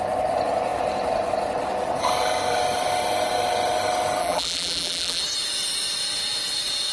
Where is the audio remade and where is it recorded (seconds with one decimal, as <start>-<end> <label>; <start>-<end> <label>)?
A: 0.0-4.2 recorded; 4.2-5.2 remade; 5.2-6.9 recorded